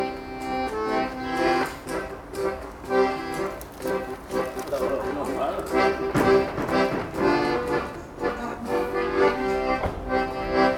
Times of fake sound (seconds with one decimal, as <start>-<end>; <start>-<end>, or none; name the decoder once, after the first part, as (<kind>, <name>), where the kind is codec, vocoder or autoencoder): 2.4-3.2 (codec, DAC); 8.5-9.8